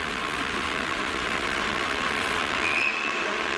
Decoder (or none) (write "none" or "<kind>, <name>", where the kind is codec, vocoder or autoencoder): vocoder, WaveNeXt